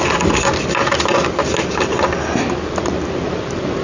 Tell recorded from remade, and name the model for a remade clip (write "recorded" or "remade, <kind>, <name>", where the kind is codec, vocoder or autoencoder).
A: recorded